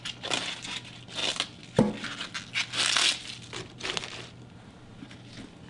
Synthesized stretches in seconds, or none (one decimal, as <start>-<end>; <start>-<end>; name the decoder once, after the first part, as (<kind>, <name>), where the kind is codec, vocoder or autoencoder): none